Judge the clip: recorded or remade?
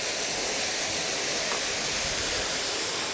recorded